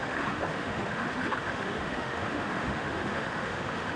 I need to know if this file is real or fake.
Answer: fake